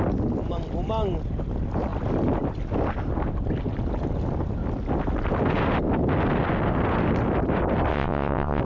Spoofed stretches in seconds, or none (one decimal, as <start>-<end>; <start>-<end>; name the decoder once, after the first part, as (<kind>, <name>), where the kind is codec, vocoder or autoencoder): 7.9-8.6 (vocoder, WaveNeXt)